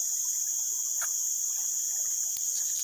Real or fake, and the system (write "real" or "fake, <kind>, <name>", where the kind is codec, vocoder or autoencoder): real